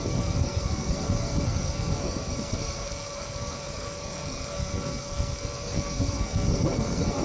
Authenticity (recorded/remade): remade